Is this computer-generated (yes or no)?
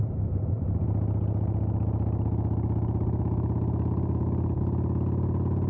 no